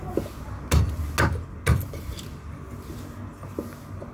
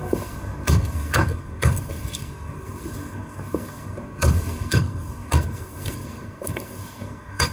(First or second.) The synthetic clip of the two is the second